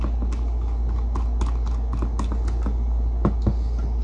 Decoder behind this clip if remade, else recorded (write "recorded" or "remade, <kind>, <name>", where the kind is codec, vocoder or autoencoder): recorded